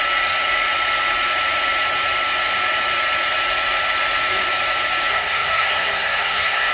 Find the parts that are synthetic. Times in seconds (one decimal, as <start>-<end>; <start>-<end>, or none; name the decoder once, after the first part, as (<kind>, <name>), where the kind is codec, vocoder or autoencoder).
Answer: 5.1-6.7 (codec, SNAC)